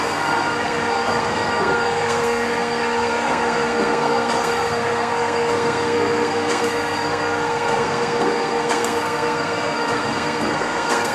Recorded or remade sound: remade